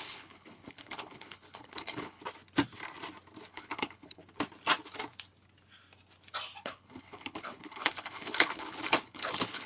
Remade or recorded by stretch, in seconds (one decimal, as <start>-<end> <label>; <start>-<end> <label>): 0.0-2.2 remade; 2.2-3.5 recorded; 3.5-4.2 remade; 4.2-6.6 recorded; 6.6-9.7 remade

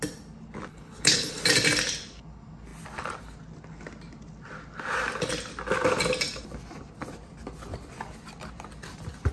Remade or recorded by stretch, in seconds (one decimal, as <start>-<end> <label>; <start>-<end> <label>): 0.0-0.7 recorded; 0.7-1.4 remade; 1.4-9.3 recorded

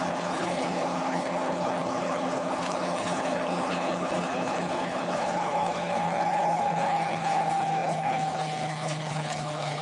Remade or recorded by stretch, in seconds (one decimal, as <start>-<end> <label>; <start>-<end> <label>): 0.0-9.8 remade

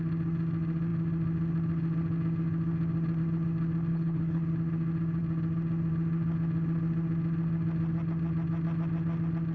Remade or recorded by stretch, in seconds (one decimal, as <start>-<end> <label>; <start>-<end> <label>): 0.0-3.9 recorded; 3.9-4.5 remade; 4.5-9.5 recorded

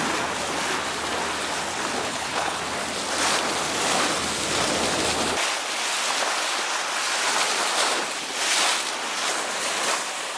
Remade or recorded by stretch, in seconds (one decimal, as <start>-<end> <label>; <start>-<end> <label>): 0.0-2.0 recorded; 2.0-2.6 remade; 2.6-10.4 recorded